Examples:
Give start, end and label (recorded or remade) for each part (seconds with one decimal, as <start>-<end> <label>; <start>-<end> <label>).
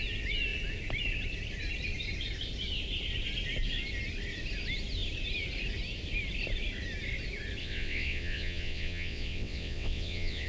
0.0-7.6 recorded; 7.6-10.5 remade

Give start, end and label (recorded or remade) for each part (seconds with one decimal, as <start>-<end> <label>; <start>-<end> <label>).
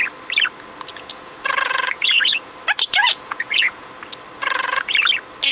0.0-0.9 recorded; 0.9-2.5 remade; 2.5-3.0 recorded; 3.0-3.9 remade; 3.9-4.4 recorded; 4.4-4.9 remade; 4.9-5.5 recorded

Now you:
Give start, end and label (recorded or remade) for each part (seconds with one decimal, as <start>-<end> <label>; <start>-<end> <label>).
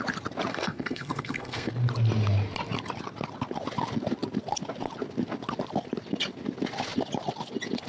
0.0-0.5 recorded; 0.5-1.7 remade; 1.7-7.9 recorded